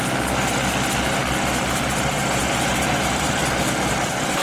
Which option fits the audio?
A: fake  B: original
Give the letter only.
B